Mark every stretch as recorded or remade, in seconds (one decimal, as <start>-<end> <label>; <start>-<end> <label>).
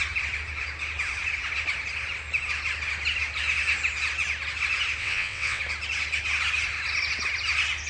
0.0-5.0 recorded; 5.0-5.6 remade; 5.6-7.9 recorded